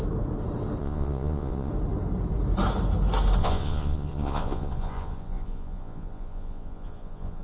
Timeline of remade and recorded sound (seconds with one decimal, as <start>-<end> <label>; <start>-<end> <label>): 0.0-0.8 recorded; 0.8-1.7 remade; 1.7-3.4 recorded; 3.4-7.4 remade